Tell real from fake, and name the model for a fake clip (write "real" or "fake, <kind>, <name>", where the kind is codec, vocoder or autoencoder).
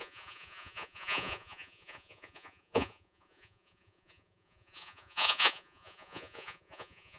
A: fake, vocoder, Vocos